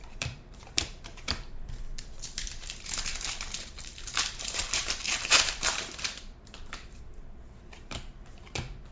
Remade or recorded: remade